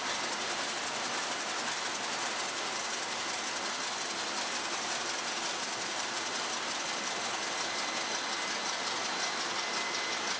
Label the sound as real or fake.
real